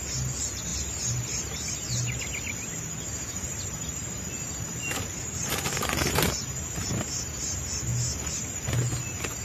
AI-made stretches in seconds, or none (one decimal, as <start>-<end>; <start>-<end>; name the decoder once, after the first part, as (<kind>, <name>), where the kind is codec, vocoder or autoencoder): none